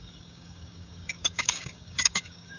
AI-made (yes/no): yes